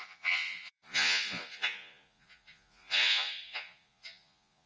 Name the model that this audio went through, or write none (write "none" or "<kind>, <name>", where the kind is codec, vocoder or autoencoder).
vocoder, Vocos